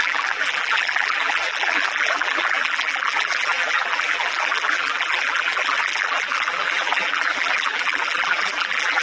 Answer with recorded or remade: remade